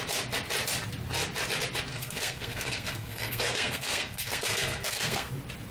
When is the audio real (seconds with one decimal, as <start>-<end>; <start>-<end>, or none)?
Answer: 0.0-1.9; 5.3-5.7